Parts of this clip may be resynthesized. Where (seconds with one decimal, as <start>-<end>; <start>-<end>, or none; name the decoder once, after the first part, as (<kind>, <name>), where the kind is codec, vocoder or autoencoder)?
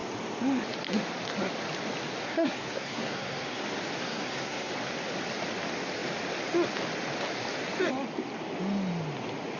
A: 2.2-3.6 (codec, SNAC); 4.0-4.7